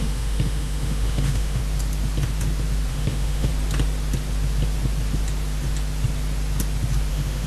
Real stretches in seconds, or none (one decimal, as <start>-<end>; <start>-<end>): 1.6-2.9; 3.5-7.1